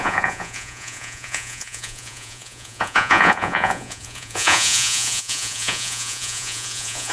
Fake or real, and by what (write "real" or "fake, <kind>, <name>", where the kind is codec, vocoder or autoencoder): fake, vocoder, Vocos